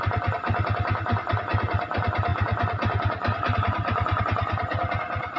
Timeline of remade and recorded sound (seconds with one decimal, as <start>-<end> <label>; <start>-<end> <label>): 0.0-5.4 recorded